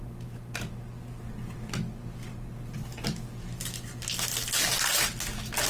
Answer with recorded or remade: recorded